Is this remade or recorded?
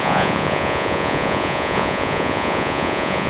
remade